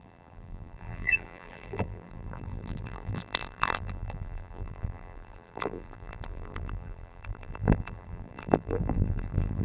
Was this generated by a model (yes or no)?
yes